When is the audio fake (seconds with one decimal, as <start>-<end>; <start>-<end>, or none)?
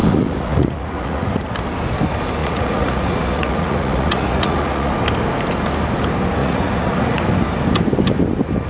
0.0-1.5; 2.4-4.9; 6.4-7.2